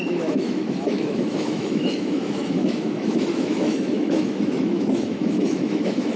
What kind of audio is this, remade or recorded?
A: remade